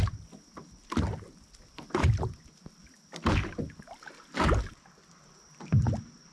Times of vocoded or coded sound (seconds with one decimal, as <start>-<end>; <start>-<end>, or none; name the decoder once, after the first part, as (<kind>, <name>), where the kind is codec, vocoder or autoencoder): none